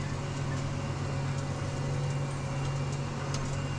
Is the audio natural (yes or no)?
yes